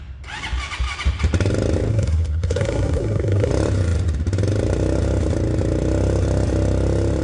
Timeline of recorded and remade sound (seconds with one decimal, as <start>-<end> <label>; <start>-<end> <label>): 0.0-1.9 recorded; 1.9-3.5 remade; 3.5-7.2 recorded